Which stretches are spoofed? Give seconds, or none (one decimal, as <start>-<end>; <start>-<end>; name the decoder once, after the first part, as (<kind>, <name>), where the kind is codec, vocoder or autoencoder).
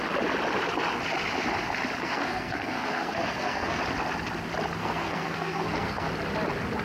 2.0-3.8 (codec, SNAC); 4.8-6.1